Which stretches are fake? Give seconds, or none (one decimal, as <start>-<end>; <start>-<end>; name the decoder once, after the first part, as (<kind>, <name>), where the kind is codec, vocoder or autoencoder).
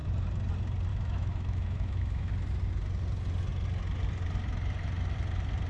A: 0.9-2.3 (autoencoder, DAC-VAE)